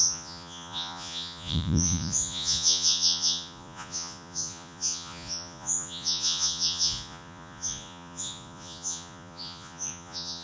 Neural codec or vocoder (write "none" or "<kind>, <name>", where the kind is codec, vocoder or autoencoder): vocoder, Vocos